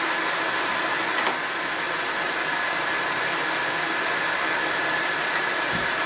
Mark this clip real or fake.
fake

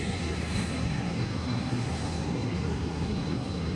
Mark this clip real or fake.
fake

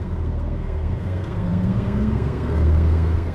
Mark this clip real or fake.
fake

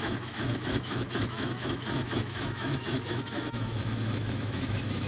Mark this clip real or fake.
fake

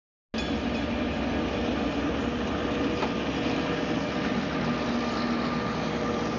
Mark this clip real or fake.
real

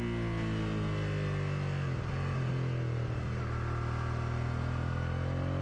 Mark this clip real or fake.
real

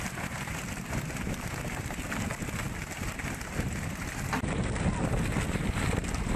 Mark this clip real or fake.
real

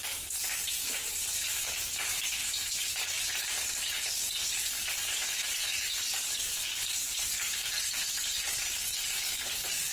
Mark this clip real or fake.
fake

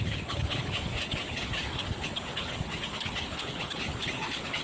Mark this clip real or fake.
fake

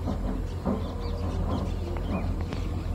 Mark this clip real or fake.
real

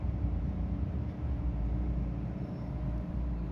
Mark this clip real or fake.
fake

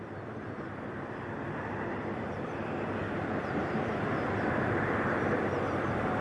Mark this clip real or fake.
fake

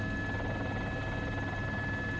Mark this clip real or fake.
real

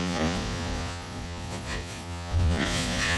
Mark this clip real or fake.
fake